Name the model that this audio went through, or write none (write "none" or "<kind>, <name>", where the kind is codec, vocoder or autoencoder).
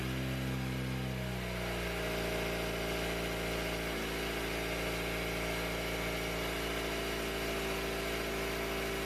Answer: none